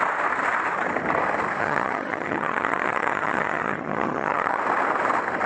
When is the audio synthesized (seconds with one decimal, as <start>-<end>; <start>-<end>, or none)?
1.6-4.6